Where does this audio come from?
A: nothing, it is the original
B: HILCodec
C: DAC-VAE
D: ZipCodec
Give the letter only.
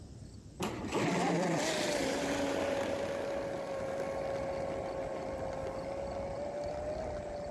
A